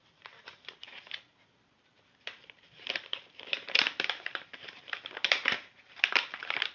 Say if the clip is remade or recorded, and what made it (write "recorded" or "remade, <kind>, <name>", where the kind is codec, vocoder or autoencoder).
remade, vocoder, BigVGAN v2